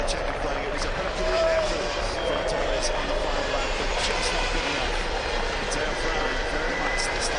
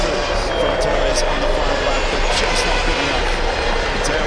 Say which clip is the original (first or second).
second